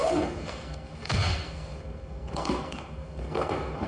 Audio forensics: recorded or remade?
remade